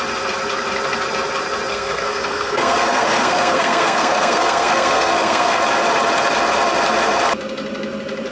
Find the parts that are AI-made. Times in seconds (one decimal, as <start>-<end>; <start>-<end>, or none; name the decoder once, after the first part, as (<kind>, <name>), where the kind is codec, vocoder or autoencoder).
1.7-5.6 (codec, SNAC)